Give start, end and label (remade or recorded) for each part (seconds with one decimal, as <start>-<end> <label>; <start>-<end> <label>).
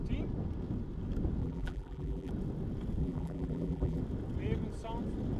0.0-1.4 recorded; 1.4-2.3 remade; 2.3-3.0 recorded; 3.0-4.0 remade; 4.0-5.4 recorded